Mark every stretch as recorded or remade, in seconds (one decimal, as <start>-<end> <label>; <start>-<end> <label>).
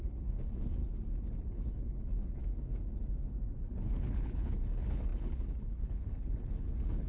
0.0-0.8 remade; 0.8-1.4 recorded; 1.4-2.4 remade; 2.4-3.6 recorded; 3.6-7.1 remade